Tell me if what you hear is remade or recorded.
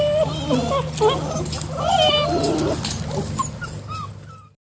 recorded